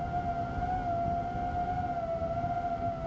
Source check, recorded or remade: recorded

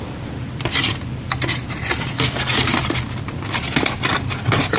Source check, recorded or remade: recorded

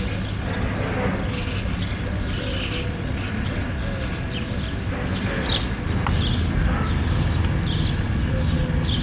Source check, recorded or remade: recorded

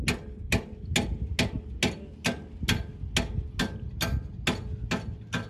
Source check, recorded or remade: recorded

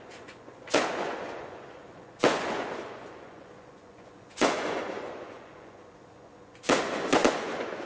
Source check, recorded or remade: remade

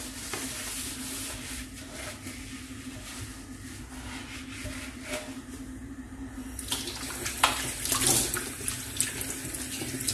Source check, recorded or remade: recorded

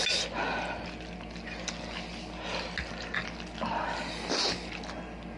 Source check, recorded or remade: recorded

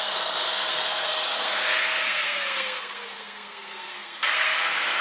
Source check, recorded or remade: remade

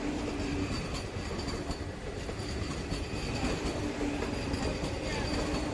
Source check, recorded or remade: recorded